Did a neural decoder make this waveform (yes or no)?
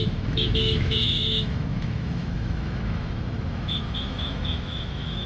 yes